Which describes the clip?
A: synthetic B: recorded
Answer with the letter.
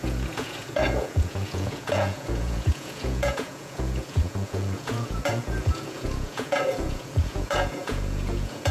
A